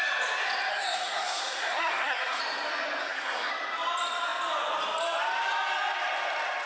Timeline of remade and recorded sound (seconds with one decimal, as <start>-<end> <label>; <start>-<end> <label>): 0.0-0.7 recorded; 0.7-2.4 remade; 2.4-3.0 recorded; 3.0-3.5 remade; 3.5-6.7 recorded